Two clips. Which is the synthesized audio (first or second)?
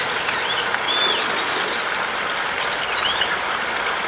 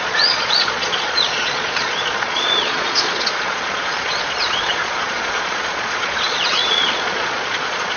second